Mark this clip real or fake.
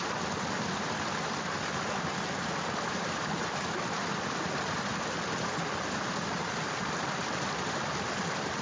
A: real